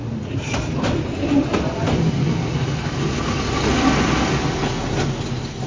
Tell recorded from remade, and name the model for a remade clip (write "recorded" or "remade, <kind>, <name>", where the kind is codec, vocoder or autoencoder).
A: recorded